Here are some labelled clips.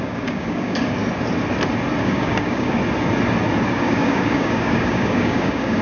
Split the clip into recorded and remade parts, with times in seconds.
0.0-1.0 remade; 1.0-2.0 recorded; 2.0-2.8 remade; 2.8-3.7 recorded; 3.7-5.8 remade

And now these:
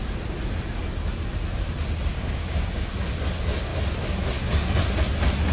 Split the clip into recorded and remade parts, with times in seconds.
0.0-2.1 recorded; 2.1-2.9 remade; 2.9-5.5 recorded

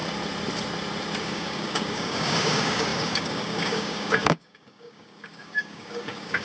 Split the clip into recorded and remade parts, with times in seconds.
0.0-1.2 recorded; 1.2-6.4 remade

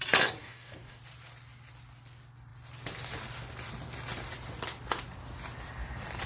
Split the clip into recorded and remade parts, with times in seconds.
0.0-0.4 recorded; 0.4-1.0 remade; 1.0-6.3 recorded

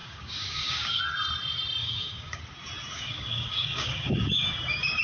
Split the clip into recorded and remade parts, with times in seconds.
0.0-1.0 remade; 1.0-1.8 recorded; 1.8-2.4 remade; 2.4-2.9 recorded; 2.9-5.0 remade

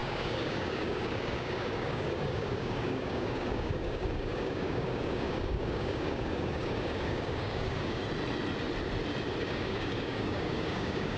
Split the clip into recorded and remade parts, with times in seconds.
0.0-8.0 remade; 8.0-9.4 recorded; 9.4-11.2 remade